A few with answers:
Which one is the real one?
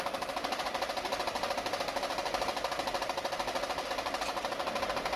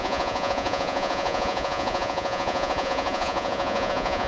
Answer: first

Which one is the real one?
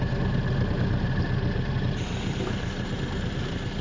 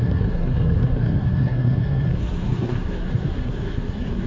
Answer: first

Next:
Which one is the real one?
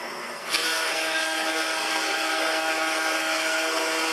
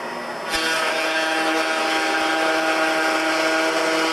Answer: second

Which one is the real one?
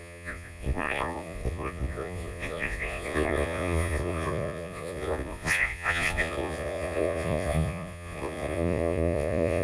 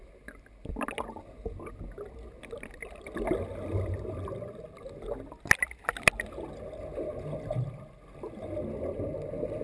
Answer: second